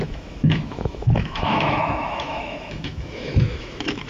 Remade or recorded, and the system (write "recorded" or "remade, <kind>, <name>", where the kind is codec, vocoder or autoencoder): remade, autoencoder, DAC-VAE